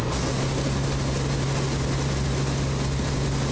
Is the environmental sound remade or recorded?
recorded